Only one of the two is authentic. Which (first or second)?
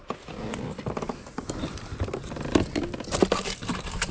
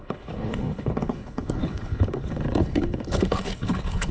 first